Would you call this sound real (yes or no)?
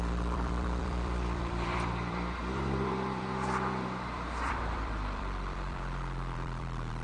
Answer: no